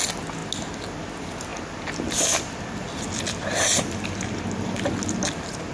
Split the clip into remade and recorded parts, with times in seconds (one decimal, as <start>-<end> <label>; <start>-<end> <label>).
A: 0.0-5.7 recorded